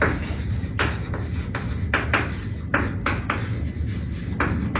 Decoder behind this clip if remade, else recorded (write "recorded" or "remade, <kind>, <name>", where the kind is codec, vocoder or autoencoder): recorded